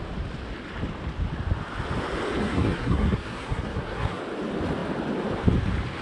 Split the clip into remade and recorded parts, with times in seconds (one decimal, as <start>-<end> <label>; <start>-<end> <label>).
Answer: 0.0-2.4 recorded; 2.4-4.2 remade; 4.2-6.0 recorded